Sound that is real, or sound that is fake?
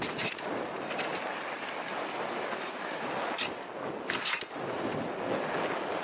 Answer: real